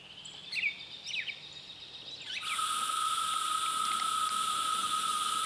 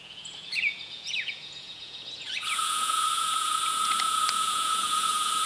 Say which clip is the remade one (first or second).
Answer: second